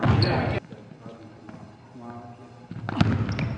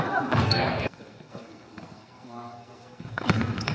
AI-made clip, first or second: second